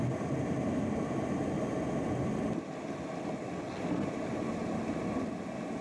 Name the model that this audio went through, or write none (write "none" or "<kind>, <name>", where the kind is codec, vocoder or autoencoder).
none